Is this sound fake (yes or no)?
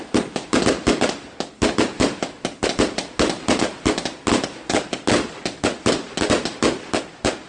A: no